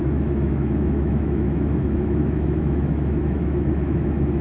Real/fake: fake